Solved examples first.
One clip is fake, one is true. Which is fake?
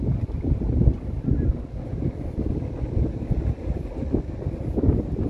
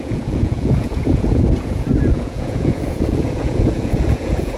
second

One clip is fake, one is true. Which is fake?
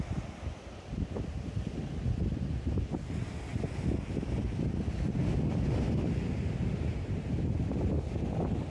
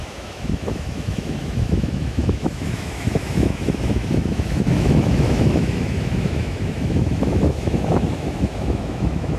second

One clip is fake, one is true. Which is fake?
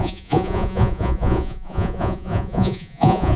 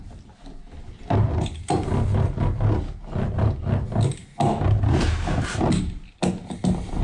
first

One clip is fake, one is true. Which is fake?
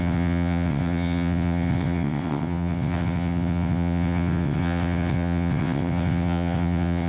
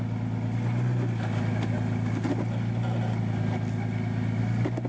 first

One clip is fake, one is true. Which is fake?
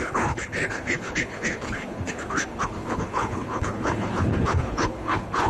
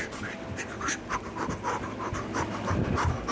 first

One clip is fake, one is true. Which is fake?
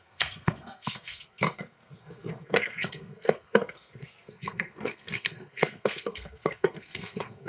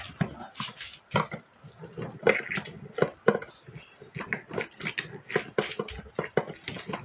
first